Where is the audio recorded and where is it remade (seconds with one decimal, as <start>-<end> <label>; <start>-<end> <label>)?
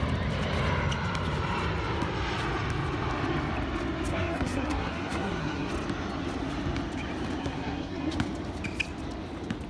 0.0-4.1 recorded; 4.1-5.7 remade; 5.7-7.4 recorded; 7.4-8.1 remade; 8.1-9.7 recorded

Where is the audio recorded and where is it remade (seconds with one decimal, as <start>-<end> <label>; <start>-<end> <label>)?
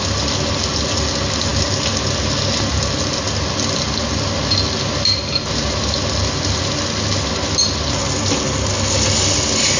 0.0-9.8 recorded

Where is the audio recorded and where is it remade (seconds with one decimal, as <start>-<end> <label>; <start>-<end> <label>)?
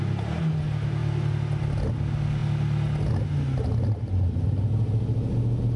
0.0-5.8 recorded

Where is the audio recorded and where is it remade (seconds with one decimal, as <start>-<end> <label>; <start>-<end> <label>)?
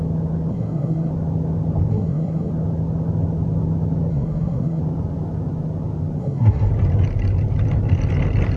0.0-0.5 recorded; 0.5-1.1 remade; 1.1-1.9 recorded; 1.9-2.5 remade; 2.5-4.1 recorded; 4.1-4.8 remade; 4.8-6.2 recorded; 6.2-6.7 remade; 6.7-8.6 recorded